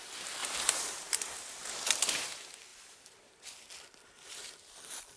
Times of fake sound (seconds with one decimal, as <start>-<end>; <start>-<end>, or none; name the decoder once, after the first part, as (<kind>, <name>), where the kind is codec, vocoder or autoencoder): 0.4-2.1 (vocoder, BigVGAN v2)

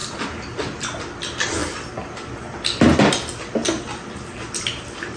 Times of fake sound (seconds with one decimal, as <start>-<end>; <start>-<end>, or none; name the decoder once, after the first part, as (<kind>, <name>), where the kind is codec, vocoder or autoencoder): none

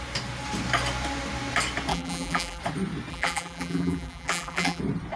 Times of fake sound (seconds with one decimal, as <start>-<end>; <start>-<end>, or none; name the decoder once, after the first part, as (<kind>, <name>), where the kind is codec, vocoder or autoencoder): 1.9-2.6 (vocoder, BigVGAN v2); 3.1-4.8